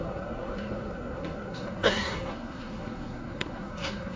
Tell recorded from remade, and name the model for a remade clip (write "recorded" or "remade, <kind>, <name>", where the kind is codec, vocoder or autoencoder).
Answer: remade, codec, SNAC